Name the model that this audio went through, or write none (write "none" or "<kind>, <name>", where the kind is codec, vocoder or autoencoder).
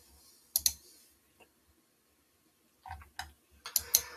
none